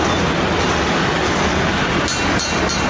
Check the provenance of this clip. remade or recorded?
recorded